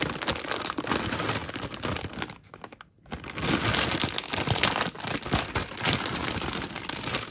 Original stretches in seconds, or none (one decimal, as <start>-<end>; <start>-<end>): 0.0-7.3